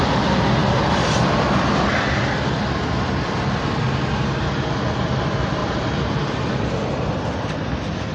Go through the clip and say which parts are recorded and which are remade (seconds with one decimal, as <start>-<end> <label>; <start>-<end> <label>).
0.0-5.6 recorded; 5.6-6.6 remade; 6.6-8.1 recorded